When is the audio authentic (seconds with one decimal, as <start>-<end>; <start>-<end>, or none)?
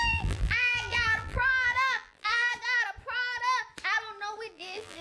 2.5-4.5